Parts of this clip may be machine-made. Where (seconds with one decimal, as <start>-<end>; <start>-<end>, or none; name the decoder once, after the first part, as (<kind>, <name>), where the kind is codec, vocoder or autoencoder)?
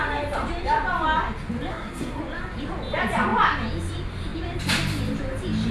1.7-2.2 (codec, SNAC)